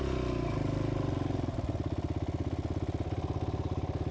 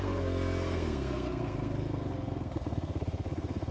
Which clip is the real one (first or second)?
first